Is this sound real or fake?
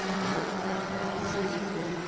fake